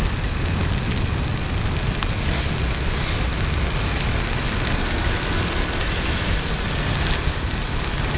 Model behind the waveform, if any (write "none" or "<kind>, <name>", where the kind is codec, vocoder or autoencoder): none